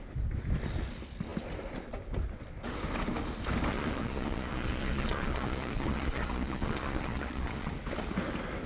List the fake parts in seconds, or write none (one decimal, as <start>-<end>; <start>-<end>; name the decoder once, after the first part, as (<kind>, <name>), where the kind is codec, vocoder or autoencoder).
3.7-7.7 (vocoder, Vocos)